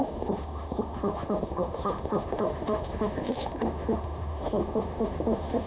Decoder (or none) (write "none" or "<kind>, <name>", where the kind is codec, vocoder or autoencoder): autoencoder, DAC-VAE